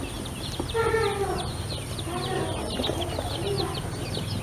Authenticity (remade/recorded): recorded